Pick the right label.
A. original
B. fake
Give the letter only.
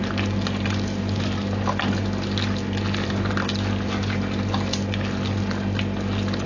A